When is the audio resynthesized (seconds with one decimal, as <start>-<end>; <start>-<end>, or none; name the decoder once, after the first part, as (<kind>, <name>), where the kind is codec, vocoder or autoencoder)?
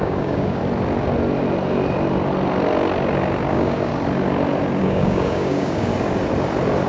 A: 0.0-0.6 (codec, DAC); 3.5-3.9; 4.8-5.9